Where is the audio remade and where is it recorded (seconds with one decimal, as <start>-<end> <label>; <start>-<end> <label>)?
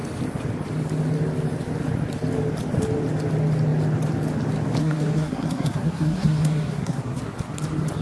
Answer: 0.0-4.8 recorded; 4.8-7.2 remade; 7.2-8.0 recorded